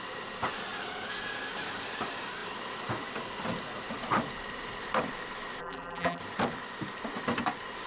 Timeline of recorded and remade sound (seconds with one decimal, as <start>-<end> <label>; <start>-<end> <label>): 0.0-5.6 recorded; 5.6-6.2 remade; 6.2-7.9 recorded